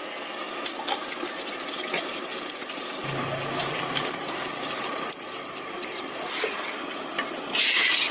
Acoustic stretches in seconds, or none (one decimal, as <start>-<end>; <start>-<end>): 0.0-8.1